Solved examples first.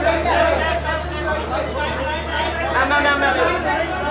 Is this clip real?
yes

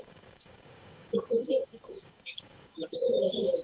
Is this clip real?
no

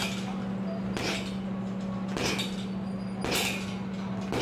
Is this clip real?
yes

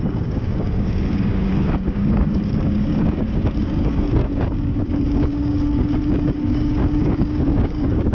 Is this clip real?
no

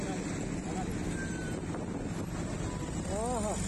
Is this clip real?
yes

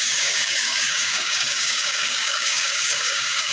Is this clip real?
no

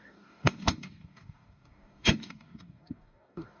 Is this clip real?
no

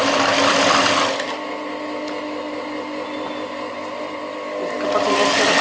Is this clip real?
yes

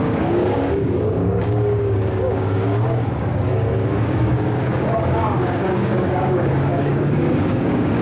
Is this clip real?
no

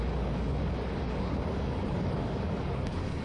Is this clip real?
no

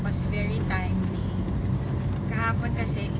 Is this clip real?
yes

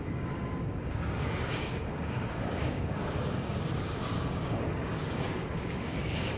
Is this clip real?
no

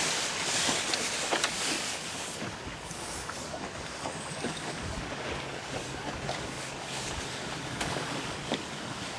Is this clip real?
no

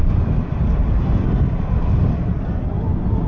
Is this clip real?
yes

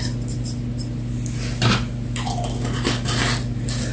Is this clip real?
yes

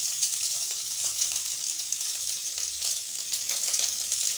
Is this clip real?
no